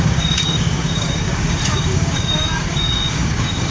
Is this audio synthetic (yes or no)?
yes